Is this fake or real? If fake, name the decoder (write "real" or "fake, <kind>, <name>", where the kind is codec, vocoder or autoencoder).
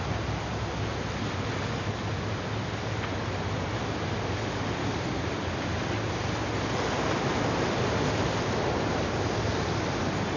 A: real